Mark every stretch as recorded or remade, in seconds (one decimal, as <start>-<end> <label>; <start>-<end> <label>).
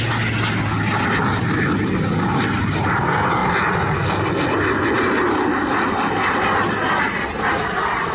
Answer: 0.0-8.1 recorded